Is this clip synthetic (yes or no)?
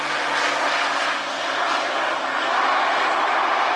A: no